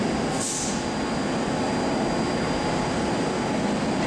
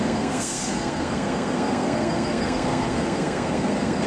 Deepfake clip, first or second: second